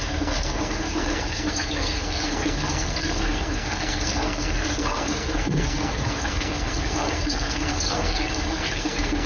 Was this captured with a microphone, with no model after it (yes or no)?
no